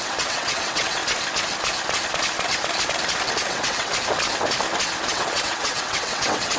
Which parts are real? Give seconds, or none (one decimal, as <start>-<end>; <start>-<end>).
1.0-3.5; 3.9-5.1